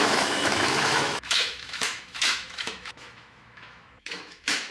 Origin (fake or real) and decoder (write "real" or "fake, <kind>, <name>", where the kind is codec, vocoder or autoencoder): fake, autoencoder, DAC-VAE